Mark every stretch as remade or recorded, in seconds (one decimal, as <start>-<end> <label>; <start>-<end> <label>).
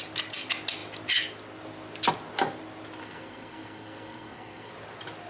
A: 0.0-3.0 recorded; 3.0-4.7 remade; 4.7-5.3 recorded